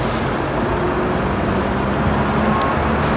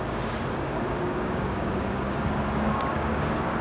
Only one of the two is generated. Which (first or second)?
second